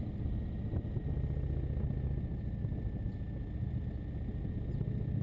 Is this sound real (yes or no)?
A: yes